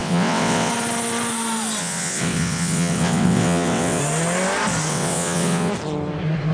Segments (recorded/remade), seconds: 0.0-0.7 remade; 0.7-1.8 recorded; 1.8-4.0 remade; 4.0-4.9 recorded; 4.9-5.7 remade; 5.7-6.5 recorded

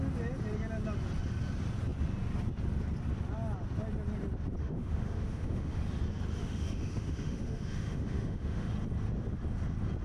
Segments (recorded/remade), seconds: 0.0-4.6 recorded; 4.6-5.8 remade; 5.8-6.4 recorded; 6.4-8.7 remade; 8.7-10.0 recorded

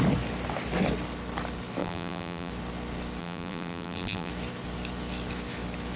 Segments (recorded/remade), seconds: 0.0-1.8 recorded; 1.8-2.5 remade; 2.5-3.2 recorded; 3.2-4.3 remade; 4.3-6.0 recorded

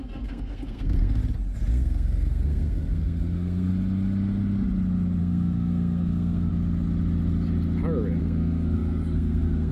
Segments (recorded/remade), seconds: 0.0-1.2 remade; 1.2-1.7 recorded; 1.7-3.7 remade; 3.7-5.2 recorded; 5.2-6.5 remade; 6.5-8.2 recorded; 8.2-9.7 remade